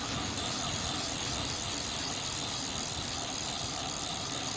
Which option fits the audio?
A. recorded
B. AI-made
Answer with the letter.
A